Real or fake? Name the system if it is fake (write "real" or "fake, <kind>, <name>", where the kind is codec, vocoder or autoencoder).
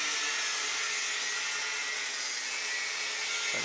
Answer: real